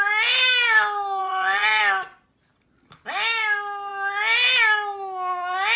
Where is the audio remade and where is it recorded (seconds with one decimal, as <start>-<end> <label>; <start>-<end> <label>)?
0.0-1.2 recorded; 1.2-1.8 remade; 1.8-5.8 recorded